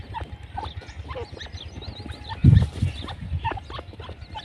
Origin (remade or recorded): recorded